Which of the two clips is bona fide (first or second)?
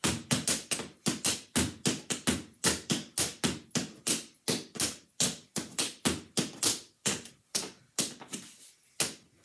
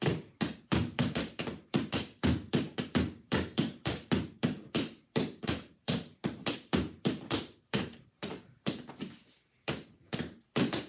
first